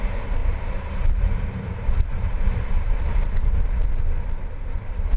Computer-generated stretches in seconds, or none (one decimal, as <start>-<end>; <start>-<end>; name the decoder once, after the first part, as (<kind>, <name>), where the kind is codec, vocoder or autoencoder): 0.4-3.5 (vocoder, BigVGAN v2)